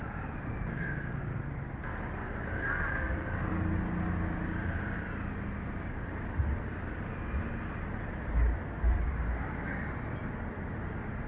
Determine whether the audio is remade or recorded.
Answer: recorded